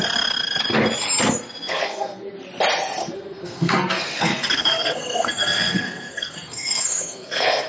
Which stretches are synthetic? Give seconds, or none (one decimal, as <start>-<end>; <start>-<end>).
1.7-2.3; 3.0-7.7